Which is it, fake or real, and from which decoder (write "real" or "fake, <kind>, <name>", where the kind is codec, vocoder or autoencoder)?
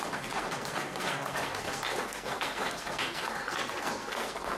fake, codec, SNAC